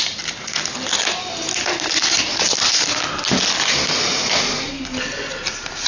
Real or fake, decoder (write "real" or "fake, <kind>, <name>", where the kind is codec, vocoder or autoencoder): real